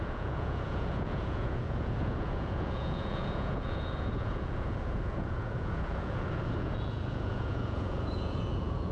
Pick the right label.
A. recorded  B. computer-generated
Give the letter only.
B